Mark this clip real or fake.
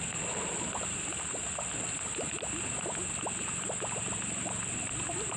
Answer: real